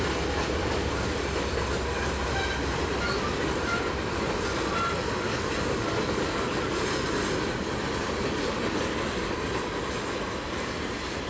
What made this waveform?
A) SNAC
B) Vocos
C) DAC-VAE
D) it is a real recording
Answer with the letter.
D